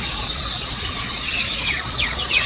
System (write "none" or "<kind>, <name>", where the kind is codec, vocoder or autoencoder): vocoder, Vocos